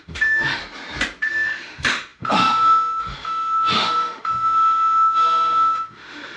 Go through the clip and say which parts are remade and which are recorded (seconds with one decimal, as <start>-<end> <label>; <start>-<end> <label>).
0.0-0.6 remade; 0.6-1.3 recorded; 1.3-6.4 remade